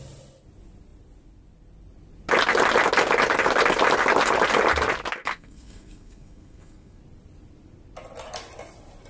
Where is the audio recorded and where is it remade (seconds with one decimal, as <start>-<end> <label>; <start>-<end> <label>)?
0.0-5.2 recorded; 5.2-7.0 remade; 7.0-9.1 recorded